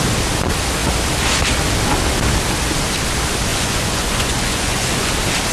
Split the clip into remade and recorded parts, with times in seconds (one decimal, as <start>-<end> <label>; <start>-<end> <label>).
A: 0.0-3.5 recorded; 3.5-5.1 remade; 5.1-5.5 recorded